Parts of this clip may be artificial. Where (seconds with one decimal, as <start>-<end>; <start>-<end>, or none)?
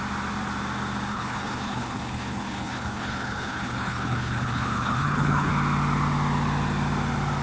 1.1-5.5